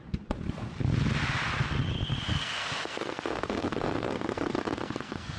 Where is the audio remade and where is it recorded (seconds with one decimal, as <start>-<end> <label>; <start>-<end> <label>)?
0.0-2.3 recorded; 2.3-5.4 remade